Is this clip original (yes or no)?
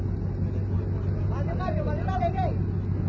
yes